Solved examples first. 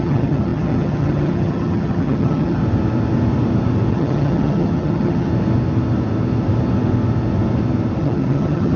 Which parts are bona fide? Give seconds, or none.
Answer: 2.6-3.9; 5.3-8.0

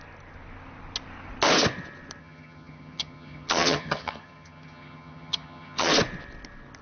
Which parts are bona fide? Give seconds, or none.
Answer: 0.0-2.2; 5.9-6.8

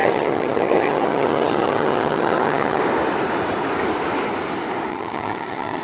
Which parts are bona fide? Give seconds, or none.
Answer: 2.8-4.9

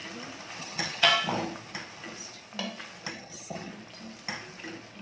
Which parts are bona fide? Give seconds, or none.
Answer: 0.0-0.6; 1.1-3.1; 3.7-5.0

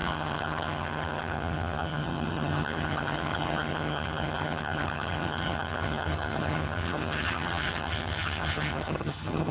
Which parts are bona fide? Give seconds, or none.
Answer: none